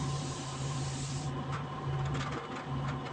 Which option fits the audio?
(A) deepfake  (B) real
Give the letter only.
B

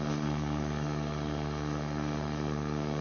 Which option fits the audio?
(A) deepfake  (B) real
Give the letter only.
A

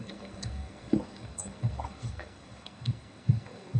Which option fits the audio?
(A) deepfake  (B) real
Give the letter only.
A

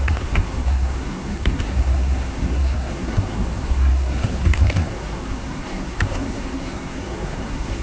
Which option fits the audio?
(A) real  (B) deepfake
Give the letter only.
B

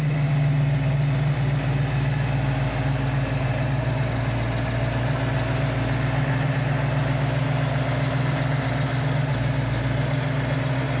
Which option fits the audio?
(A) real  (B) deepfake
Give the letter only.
A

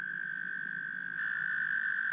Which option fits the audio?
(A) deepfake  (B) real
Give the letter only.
B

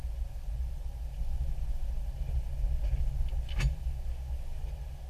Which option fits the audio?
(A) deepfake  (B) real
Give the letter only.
B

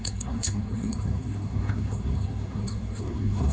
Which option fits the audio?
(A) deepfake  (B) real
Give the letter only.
A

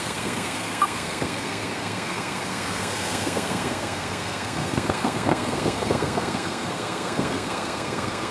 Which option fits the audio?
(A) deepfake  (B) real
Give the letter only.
A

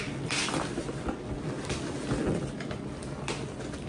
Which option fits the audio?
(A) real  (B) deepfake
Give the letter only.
A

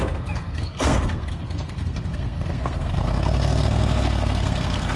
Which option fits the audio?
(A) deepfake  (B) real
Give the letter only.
A